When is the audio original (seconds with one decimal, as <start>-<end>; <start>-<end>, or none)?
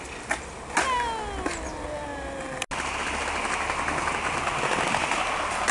0.0-5.7